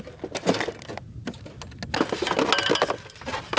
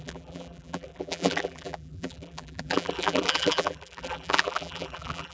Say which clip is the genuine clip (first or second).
first